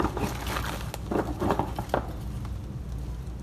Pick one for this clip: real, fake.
real